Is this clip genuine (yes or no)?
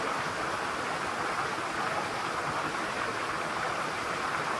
yes